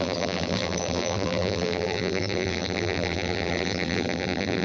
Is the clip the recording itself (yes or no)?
no